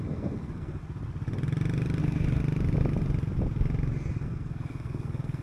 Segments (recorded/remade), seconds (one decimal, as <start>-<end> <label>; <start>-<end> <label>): 0.0-0.8 remade; 0.8-2.0 recorded; 2.0-2.4 remade; 2.4-4.1 recorded; 4.1-5.4 remade